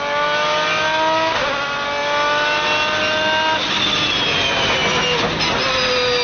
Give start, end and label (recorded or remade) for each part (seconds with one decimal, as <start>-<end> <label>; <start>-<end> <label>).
0.0-6.2 recorded